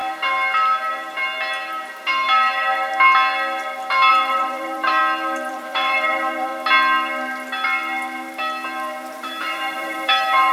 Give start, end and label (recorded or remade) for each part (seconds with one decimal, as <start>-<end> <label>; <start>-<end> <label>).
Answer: 0.0-4.1 recorded; 4.1-5.0 remade; 5.0-5.5 recorded; 5.5-6.5 remade; 6.5-9.1 recorded; 9.1-10.5 remade